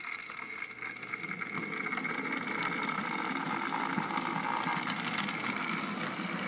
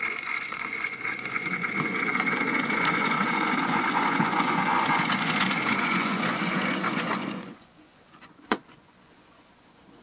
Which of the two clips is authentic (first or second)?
first